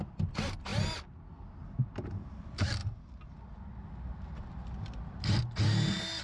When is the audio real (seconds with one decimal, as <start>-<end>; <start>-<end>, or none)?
0.0-6.2